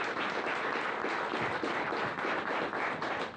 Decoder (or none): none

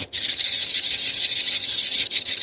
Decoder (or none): vocoder, HiFi-GAN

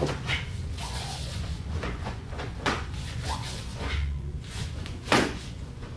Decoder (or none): vocoder, Vocos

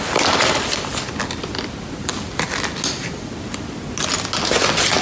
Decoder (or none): none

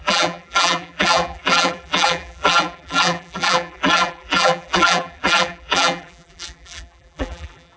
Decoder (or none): vocoder, BigVGAN v2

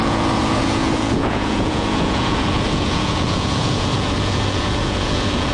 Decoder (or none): vocoder, Vocos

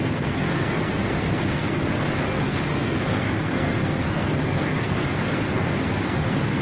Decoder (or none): codec, SNAC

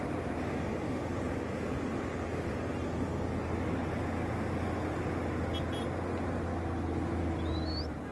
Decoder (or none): none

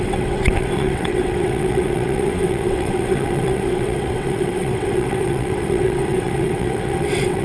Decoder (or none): vocoder, WaveNeXt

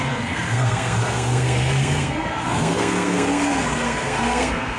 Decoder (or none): codec, SNAC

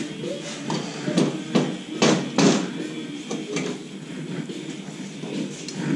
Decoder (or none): none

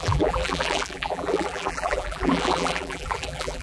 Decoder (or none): vocoder, BigVGAN v2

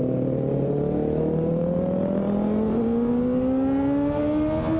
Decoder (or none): none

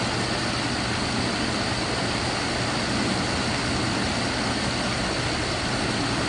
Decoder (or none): none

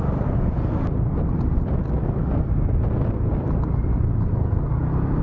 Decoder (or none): none